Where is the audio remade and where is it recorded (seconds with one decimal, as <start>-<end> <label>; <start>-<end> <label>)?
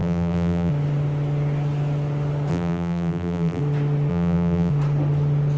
0.0-0.7 remade; 0.7-2.5 recorded; 2.5-3.6 remade; 3.6-4.1 recorded; 4.1-4.7 remade; 4.7-5.6 recorded